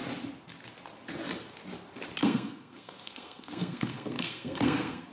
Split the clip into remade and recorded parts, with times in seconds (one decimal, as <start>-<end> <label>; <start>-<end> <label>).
0.0-2.2 recorded; 2.2-5.1 remade